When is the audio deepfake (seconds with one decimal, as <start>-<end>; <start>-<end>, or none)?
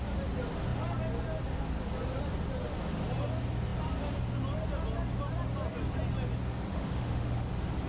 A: 6.7-7.5